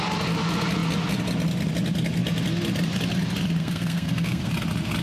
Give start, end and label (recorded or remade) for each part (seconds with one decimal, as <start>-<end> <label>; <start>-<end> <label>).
0.0-3.6 recorded; 3.6-4.5 remade; 4.5-5.0 recorded